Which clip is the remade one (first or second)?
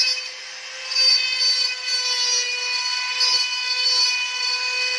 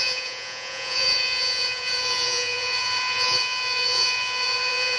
second